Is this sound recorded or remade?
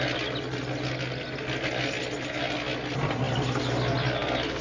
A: recorded